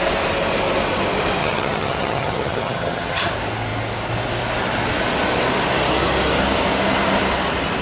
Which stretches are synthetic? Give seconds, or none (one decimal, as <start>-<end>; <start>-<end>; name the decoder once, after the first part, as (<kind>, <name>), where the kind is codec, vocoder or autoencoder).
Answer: 1.4-3.3 (vocoder, HiFi-GAN)